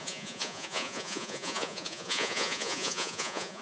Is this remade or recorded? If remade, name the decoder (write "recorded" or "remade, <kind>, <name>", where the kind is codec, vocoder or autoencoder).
remade, vocoder, Vocos